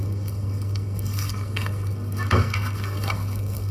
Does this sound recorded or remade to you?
remade